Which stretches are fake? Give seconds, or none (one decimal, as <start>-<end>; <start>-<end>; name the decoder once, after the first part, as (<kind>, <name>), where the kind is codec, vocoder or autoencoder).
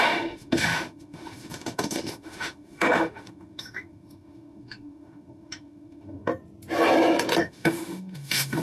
0.0-6.3 (autoencoder, DAC-VAE); 7.4-8.6